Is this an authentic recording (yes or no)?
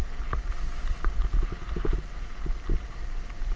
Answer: yes